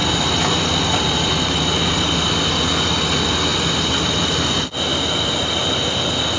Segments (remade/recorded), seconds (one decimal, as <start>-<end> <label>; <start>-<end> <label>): 0.0-1.3 remade; 1.3-4.9 recorded; 4.9-5.8 remade; 5.8-6.4 recorded